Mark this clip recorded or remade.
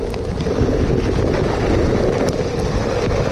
recorded